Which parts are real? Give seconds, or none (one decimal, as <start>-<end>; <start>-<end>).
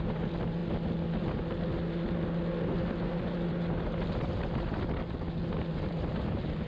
0.0-6.7